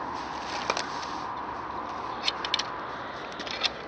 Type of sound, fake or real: real